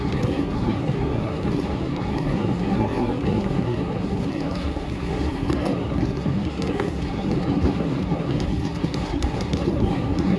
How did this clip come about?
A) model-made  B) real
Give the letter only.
A